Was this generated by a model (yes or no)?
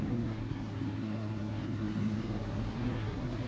yes